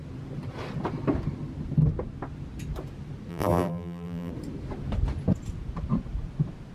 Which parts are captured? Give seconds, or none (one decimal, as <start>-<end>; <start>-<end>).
0.0-3.3; 4.3-6.7